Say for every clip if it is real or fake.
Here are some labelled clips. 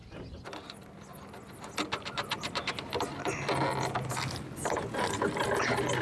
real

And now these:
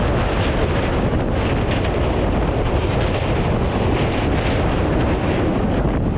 real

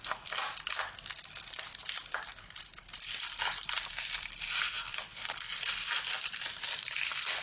real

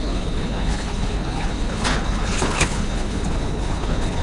fake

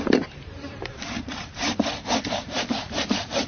fake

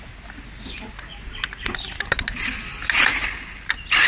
real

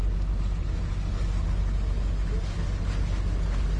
real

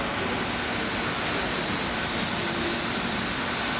real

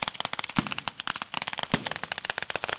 real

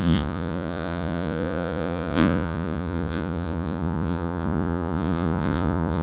fake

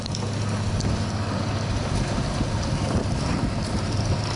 real